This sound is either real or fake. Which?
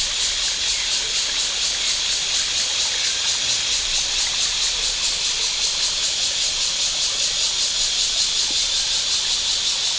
real